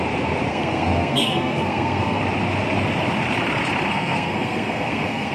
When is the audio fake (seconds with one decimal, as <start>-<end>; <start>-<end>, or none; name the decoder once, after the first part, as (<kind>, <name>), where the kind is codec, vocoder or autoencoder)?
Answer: 0.5-2.2 (codec, SNAC); 3.9-5.3